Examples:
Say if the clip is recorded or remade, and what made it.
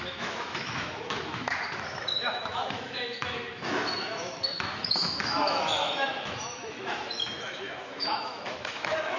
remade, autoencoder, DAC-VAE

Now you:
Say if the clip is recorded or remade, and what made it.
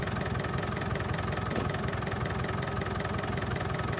recorded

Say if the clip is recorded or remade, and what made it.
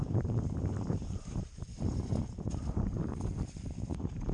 remade, vocoder, BigVGAN v2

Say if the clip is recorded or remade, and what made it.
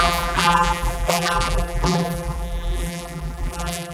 remade, vocoder, BigVGAN v2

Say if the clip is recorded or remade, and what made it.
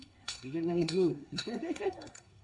remade, codec, SNAC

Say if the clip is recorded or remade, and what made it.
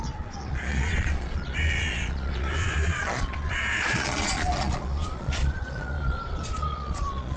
remade, vocoder, Vocos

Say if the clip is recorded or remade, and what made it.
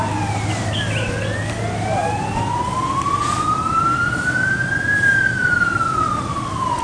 recorded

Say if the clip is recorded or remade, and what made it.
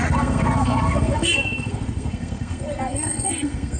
remade, codec, SNAC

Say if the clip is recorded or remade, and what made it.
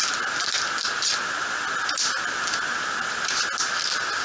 recorded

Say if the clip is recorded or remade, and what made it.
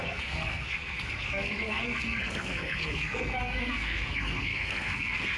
remade, codec, SNAC